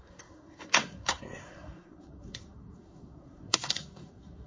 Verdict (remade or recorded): remade